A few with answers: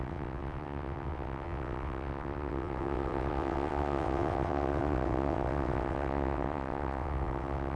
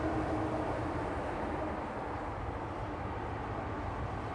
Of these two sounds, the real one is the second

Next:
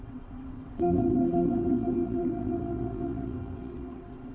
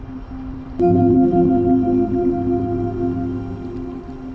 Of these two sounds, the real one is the second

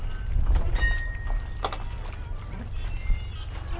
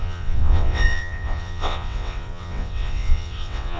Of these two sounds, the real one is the first